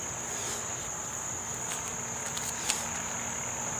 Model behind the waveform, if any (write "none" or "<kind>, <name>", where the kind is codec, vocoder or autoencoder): none